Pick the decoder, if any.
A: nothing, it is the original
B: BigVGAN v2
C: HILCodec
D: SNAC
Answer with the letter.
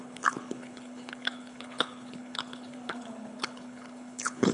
C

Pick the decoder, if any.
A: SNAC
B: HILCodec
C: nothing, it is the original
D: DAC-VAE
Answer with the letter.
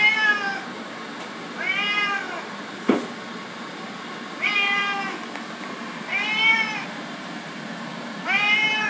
C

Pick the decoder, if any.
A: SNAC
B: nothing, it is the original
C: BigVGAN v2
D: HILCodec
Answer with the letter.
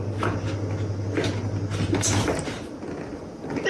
B